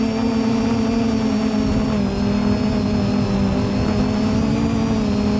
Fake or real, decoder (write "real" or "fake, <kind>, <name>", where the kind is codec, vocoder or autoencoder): real